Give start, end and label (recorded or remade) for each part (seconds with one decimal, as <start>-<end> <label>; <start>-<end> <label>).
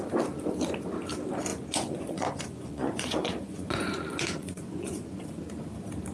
0.0-1.5 recorded; 1.5-5.2 remade; 5.2-6.1 recorded